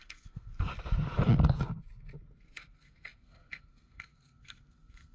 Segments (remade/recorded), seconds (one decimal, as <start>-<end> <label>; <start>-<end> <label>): 0.0-0.7 remade; 0.7-2.4 recorded; 2.4-5.1 remade